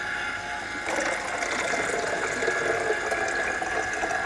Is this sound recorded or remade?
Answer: recorded